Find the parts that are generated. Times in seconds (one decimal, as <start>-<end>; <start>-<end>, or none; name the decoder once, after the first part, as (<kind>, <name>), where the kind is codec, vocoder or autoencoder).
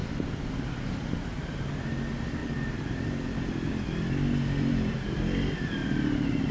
0.0-0.5 (vocoder, BigVGAN v2); 2.4-5.1